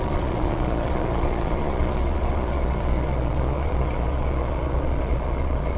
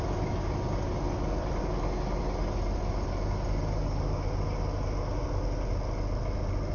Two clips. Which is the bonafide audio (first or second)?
second